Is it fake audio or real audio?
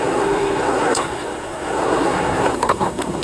fake